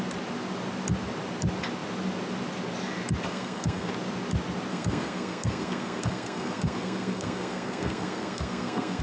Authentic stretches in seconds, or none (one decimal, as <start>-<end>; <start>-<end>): 0.0-3.3; 3.9-4.7